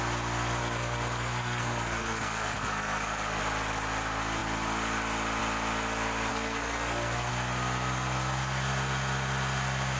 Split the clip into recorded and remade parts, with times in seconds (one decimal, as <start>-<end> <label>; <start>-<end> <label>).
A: 0.0-0.6 recorded; 0.6-3.4 remade; 3.4-6.3 recorded; 6.3-7.3 remade; 7.3-10.0 recorded